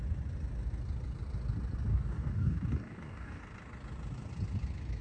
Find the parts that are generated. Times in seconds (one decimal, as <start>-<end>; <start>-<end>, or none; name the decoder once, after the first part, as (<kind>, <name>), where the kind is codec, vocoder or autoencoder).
1.9-3.4 (codec, DAC)